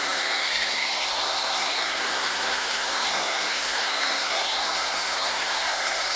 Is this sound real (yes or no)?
no